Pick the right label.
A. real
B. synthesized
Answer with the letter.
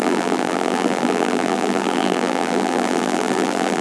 B